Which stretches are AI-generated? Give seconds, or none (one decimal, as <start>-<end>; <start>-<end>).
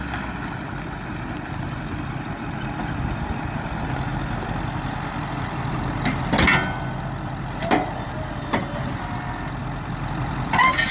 9.6-10.9